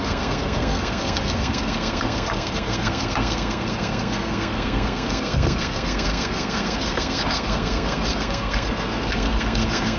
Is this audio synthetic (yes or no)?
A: yes